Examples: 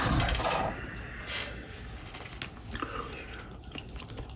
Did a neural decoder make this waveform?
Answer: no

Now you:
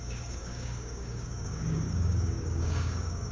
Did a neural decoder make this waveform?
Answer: yes